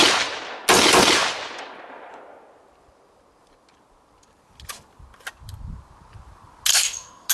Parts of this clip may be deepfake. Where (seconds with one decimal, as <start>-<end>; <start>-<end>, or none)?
6.7-7.3